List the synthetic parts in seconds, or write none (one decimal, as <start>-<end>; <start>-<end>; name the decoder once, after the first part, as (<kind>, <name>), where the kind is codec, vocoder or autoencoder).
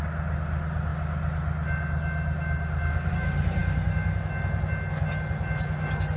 none